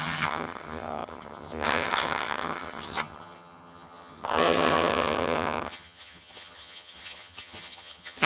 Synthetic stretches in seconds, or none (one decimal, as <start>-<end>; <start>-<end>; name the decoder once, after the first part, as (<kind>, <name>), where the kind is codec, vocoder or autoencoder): 0.0-8.3 (vocoder, HiFi-GAN)